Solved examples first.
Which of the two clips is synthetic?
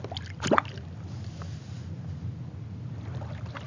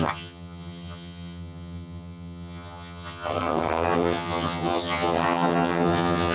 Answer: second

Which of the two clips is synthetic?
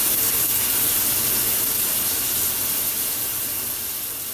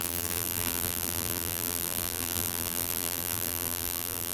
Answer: second